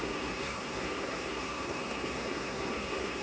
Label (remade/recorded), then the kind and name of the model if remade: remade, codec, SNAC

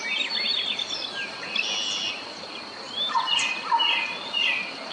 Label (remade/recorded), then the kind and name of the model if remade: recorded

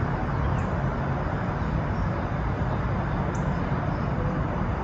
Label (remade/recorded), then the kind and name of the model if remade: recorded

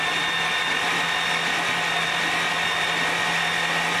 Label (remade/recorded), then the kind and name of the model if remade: recorded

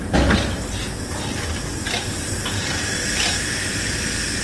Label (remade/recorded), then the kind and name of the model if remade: recorded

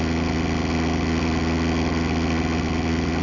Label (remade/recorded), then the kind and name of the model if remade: recorded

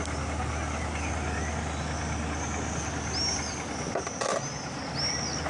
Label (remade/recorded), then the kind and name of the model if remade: recorded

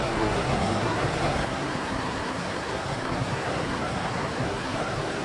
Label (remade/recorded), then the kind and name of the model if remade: remade, codec, SNAC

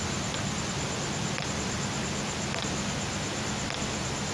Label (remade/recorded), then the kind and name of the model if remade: recorded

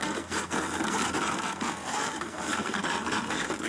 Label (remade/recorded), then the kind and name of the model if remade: remade, codec, SNAC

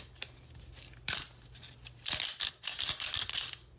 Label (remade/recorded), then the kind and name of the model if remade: recorded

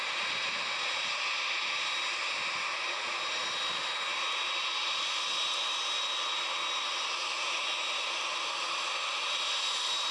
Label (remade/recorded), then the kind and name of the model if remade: recorded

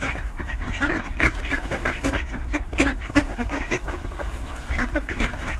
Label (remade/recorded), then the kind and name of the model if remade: remade, codec, SNAC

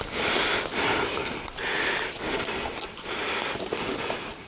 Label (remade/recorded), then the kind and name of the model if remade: recorded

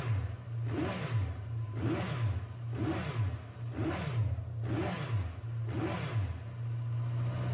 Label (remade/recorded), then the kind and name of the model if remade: recorded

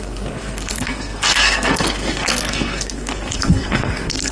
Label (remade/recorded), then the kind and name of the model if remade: remade, codec, SNAC